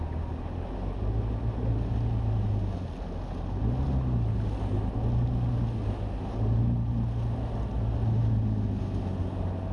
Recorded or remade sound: recorded